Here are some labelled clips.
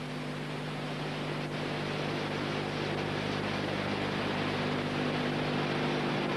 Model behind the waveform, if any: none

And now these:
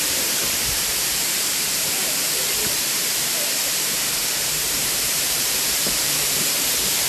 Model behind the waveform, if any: vocoder, BigVGAN v2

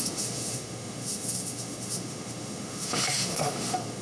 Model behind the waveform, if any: autoencoder, DAC-VAE